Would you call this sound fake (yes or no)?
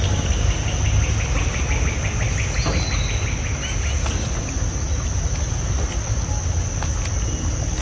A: no